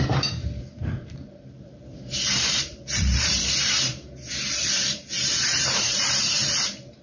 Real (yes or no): no